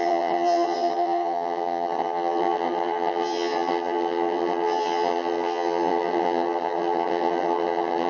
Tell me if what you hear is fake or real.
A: fake